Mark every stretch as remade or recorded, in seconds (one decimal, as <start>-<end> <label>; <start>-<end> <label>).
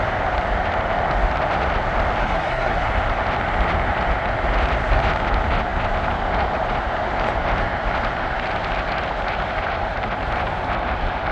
0.0-2.2 recorded; 2.2-2.9 remade; 2.9-11.3 recorded